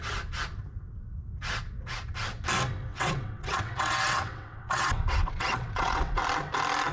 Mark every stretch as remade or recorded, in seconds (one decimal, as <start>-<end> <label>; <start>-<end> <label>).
0.0-2.9 recorded; 2.9-6.2 remade; 6.2-6.9 recorded

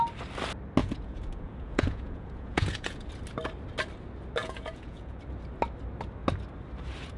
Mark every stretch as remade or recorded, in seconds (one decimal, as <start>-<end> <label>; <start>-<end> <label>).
0.0-0.8 recorded; 0.8-3.1 remade; 3.1-4.4 recorded; 4.4-5.2 remade; 5.2-7.2 recorded